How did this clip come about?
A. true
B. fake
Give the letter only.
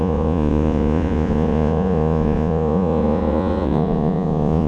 B